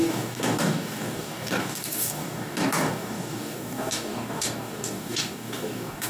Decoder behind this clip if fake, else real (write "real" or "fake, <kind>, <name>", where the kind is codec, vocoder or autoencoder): fake, codec, DAC